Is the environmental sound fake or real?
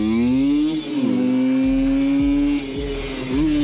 real